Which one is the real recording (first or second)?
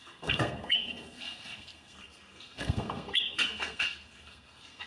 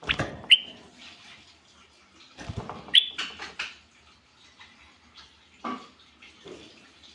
second